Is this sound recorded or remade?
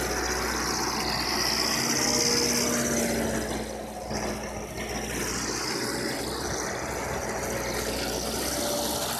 recorded